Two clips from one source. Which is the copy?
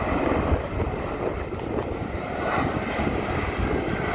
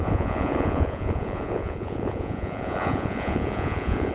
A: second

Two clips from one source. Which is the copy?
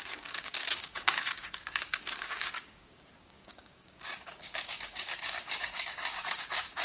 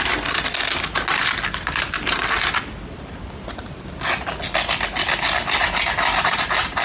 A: first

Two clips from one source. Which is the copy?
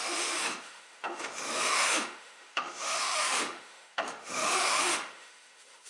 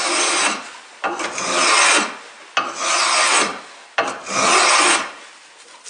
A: first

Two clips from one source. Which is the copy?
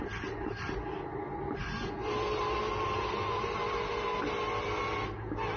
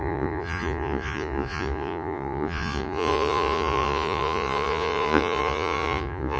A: second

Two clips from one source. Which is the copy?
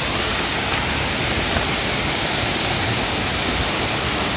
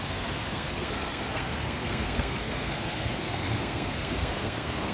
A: second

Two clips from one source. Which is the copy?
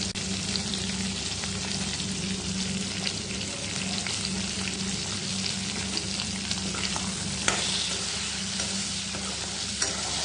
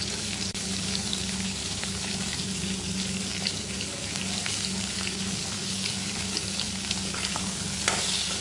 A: second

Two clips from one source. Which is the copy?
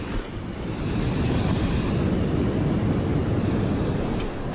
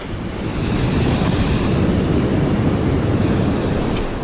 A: second